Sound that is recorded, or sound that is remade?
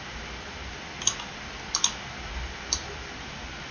recorded